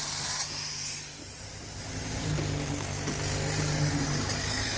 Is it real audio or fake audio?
real